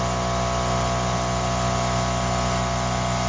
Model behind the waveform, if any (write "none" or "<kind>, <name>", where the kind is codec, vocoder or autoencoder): none